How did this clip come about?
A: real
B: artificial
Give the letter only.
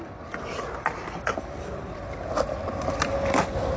A